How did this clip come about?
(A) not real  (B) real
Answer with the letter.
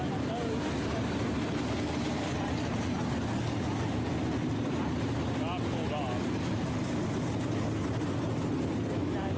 B